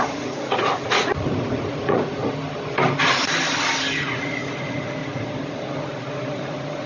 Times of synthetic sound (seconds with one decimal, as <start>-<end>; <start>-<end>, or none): 0.0-2.2; 4.0-5.0; 5.5-6.9